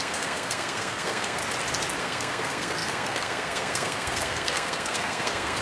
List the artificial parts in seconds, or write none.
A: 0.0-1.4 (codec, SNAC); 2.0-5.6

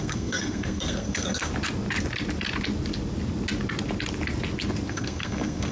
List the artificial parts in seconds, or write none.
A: 0.0-1.5 (codec, SNAC); 4.9-5.7

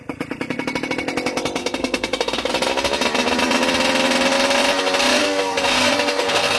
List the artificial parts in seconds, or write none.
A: 1.6-2.5 (codec, SNAC); 5.2-6.6

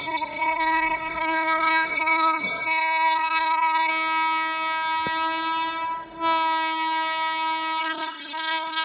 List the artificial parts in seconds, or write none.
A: 0.0-3.9 (codec, SNAC); 7.8-8.8

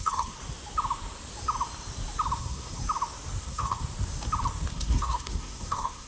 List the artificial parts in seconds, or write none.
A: 0.0-0.4 (codec, SNAC); 2.4-2.8; 3.4-3.8; 4.7-6.1